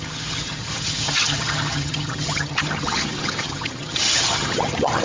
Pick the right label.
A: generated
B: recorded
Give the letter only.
A